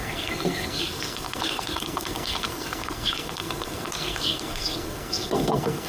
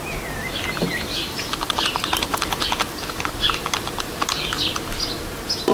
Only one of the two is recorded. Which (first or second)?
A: second